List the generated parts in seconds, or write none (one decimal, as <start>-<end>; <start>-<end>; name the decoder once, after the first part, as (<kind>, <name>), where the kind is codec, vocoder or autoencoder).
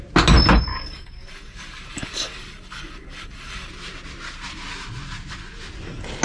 0.7-3.7 (codec, DAC)